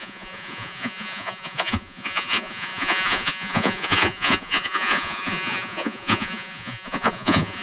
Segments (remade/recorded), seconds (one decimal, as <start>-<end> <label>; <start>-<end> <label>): 0.0-7.6 remade